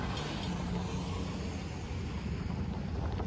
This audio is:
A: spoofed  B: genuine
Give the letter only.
B